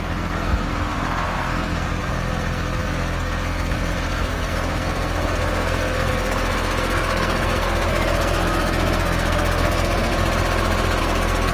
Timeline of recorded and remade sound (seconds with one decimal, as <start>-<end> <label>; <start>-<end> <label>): 0.0-10.1 remade; 10.1-11.0 recorded; 11.0-11.5 remade